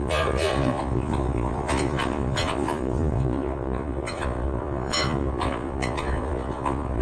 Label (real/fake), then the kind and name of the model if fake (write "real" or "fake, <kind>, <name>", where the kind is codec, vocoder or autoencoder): fake, vocoder, Vocos